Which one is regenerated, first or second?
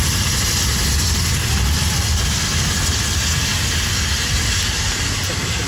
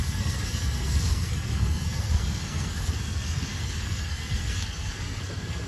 second